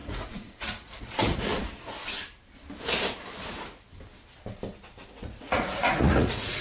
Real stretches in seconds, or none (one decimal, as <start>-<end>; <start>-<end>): 1.5-5.1